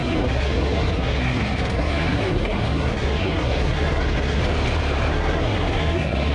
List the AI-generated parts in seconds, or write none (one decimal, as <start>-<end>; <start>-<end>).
0.0-4.4; 5.1-6.3